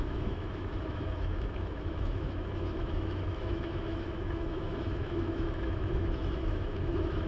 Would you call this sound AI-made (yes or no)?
yes